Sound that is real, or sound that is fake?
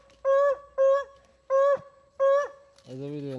real